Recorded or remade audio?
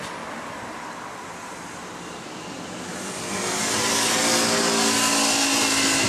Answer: recorded